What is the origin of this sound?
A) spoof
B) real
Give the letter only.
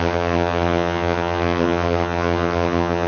A